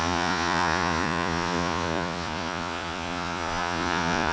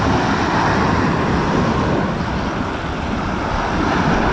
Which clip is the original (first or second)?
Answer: second